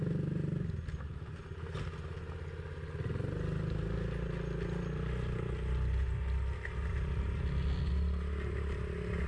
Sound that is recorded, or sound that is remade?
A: recorded